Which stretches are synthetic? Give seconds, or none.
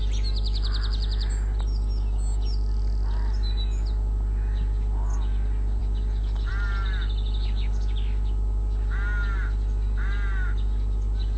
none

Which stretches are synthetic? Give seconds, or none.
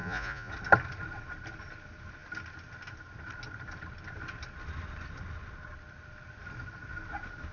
0.0-0.5 (vocoder, Vocos)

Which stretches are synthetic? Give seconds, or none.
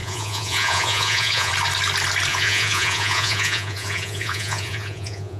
0.0-1.5 (vocoder, Vocos); 2.3-5.4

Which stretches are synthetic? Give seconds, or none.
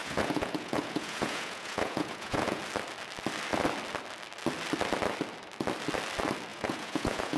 0.0-2.6 (vocoder, Vocos); 6.5-7.4